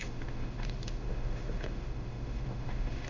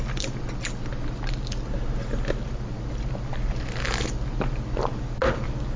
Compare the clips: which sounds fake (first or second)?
first